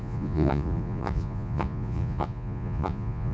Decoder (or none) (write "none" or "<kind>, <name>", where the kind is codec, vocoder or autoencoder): vocoder, Vocos